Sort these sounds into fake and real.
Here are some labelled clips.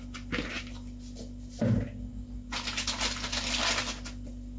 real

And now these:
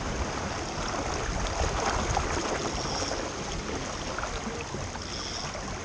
real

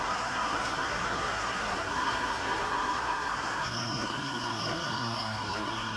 fake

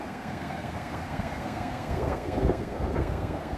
fake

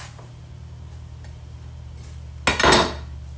real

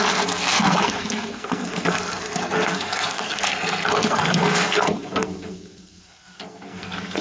fake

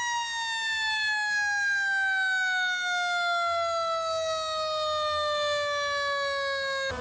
real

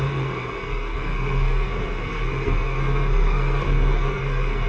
fake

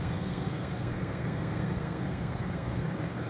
fake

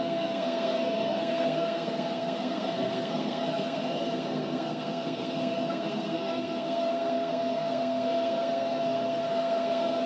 fake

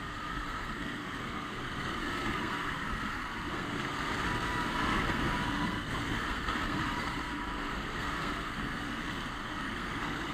fake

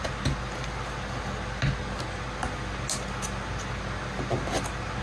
real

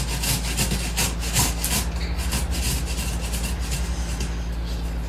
real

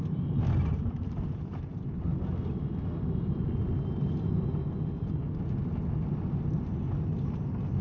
real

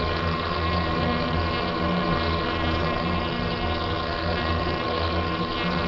fake